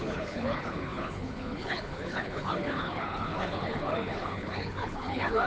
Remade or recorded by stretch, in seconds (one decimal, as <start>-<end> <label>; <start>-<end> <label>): 0.0-5.5 remade